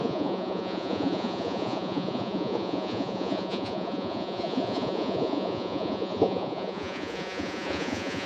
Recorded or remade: remade